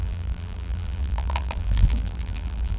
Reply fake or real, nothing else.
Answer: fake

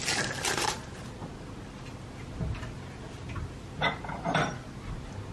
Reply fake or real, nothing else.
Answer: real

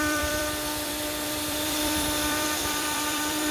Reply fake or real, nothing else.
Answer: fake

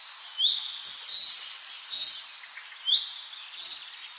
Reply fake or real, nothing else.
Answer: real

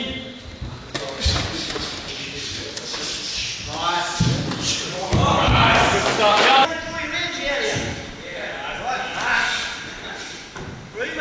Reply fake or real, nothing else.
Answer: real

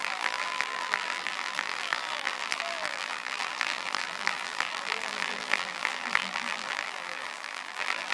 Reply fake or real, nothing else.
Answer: fake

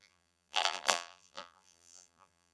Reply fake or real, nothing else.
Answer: fake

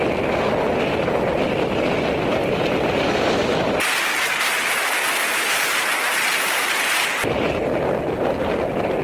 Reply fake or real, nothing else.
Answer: real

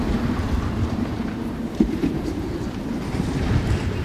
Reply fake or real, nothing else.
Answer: fake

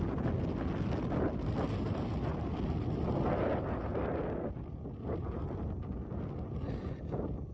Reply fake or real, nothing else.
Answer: real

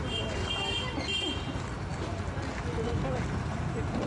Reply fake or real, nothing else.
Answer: real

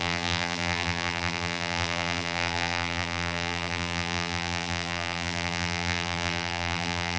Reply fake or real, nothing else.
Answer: fake